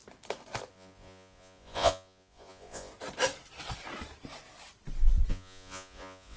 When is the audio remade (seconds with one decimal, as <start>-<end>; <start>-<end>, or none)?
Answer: 0.7-2.9; 5.3-6.4